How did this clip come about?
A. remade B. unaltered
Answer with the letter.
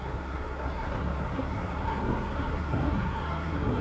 A